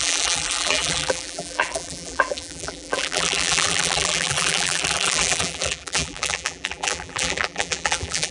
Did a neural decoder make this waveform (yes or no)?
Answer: yes